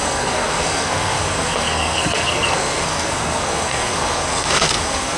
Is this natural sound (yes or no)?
no